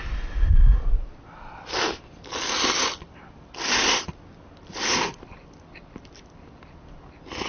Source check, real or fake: real